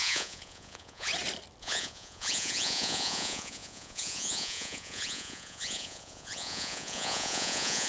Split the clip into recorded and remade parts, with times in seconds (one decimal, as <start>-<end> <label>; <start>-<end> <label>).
0.0-1.1 remade; 1.1-1.6 recorded; 1.6-7.9 remade